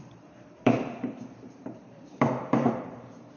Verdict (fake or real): fake